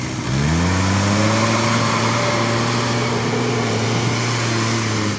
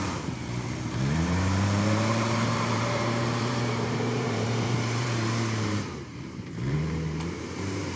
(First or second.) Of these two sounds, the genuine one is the first